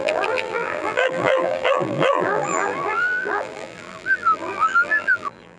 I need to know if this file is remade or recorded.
remade